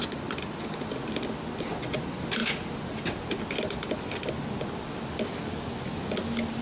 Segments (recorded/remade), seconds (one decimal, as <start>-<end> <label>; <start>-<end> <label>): 0.0-6.6 recorded